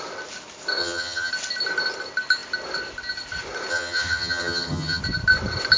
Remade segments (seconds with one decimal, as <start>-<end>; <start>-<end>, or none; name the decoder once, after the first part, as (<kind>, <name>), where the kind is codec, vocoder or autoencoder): 0.8-1.3 (vocoder, HiFi-GAN); 3.7-5.0